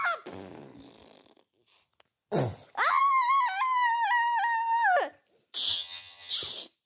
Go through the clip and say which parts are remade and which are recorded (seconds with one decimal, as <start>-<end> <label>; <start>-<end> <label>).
0.0-5.7 recorded; 5.7-6.3 remade; 6.3-6.9 recorded